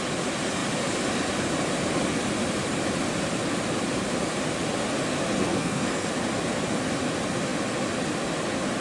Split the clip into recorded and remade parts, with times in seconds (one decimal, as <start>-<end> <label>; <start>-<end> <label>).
0.0-5.4 recorded; 5.4-6.1 remade; 6.1-8.8 recorded